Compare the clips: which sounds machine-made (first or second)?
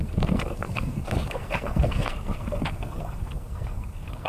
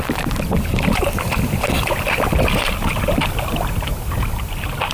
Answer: first